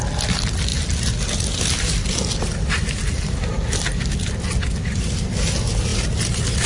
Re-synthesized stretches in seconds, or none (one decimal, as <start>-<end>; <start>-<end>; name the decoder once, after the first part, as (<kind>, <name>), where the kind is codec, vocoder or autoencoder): none